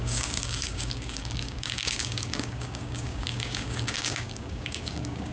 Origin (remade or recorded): remade